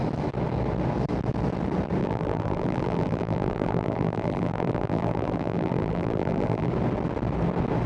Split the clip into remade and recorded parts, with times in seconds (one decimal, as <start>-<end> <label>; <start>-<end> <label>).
0.0-2.0 recorded; 2.0-6.7 remade; 6.7-7.9 recorded